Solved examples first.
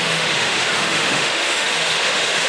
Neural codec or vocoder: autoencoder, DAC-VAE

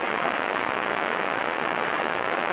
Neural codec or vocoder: vocoder, Vocos